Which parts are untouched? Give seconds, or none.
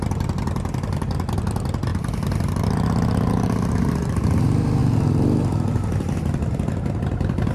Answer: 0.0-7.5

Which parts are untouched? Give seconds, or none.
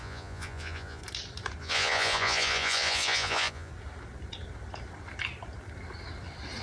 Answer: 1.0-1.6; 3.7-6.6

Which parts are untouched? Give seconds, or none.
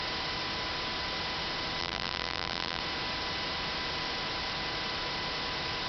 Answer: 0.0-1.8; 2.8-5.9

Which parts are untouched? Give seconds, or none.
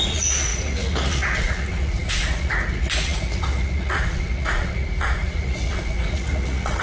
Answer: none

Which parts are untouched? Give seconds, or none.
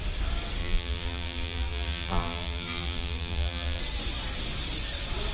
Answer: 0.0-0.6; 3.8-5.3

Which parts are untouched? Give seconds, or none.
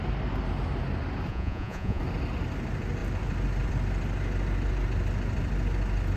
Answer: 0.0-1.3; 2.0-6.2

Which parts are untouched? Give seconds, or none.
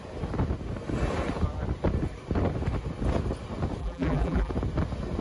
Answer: 0.0-3.8; 4.5-5.2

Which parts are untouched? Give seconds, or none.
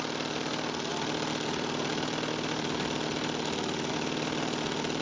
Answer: 0.0-5.0